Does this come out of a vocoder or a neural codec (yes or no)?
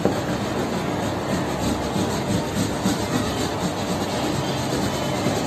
no